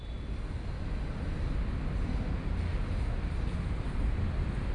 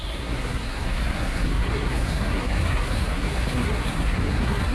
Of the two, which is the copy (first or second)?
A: second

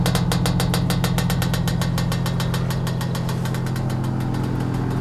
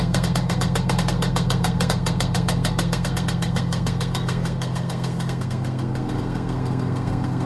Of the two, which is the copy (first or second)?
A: second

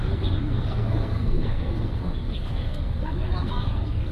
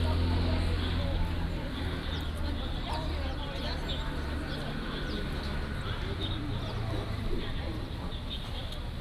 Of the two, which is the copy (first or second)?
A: first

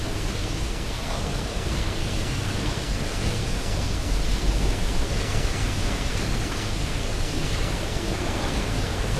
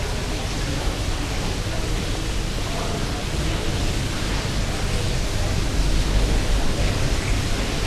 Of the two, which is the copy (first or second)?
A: first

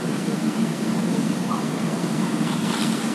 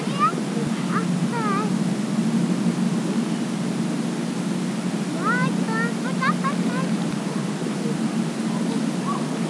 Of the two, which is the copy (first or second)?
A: first